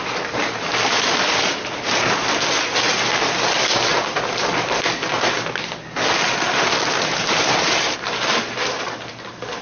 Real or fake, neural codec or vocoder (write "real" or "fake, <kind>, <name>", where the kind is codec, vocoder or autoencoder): real